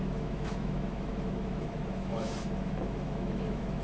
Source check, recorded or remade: remade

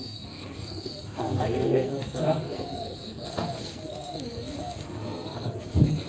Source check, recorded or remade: remade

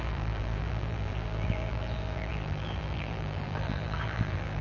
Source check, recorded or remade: remade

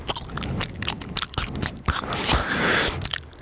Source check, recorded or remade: recorded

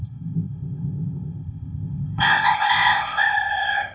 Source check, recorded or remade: remade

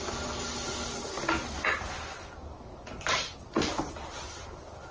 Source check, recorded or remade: recorded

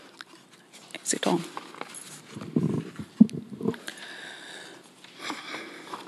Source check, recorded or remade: recorded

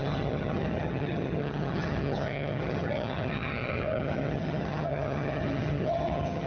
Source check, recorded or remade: remade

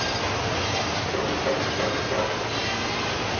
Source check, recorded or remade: recorded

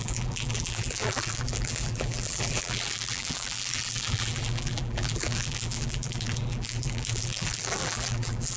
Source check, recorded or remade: remade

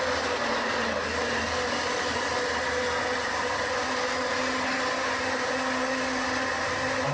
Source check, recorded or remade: recorded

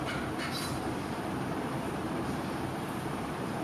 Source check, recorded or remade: remade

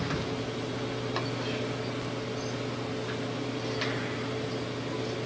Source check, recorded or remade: recorded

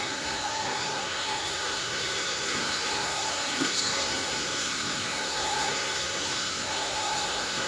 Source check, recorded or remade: remade